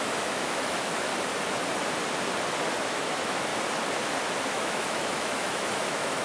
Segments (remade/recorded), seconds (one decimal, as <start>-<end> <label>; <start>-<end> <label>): 0.0-1.1 remade; 1.1-2.8 recorded; 2.8-3.5 remade; 3.5-4.5 recorded; 4.5-6.2 remade